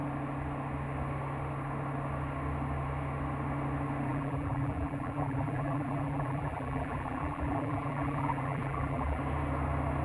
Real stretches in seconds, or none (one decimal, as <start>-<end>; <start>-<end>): 0.0-4.1; 9.2-10.0